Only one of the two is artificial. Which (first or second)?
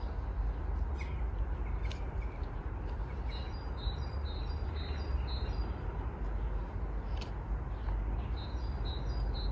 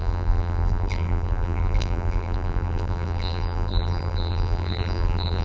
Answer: second